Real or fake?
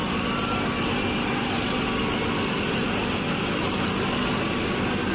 real